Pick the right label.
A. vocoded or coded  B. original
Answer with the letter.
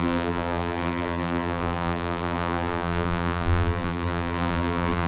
A